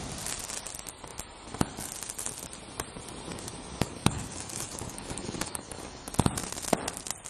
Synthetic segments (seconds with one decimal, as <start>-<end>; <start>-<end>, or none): 3.3-6.1